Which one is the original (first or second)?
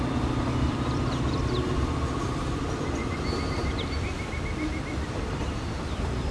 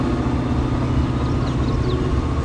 second